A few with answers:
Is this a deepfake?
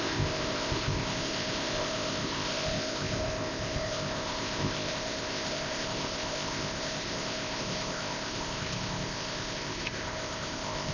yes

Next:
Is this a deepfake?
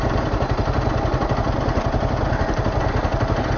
no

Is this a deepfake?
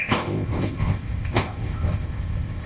yes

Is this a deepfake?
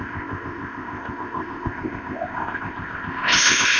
yes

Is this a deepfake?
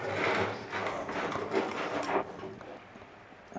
no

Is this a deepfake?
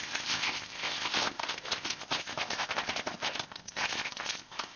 yes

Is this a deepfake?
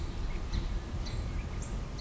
no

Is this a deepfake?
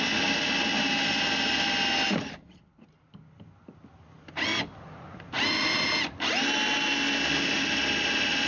no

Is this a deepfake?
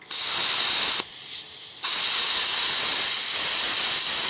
no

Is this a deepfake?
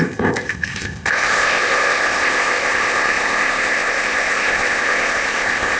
yes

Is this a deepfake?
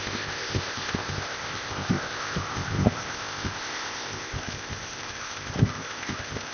yes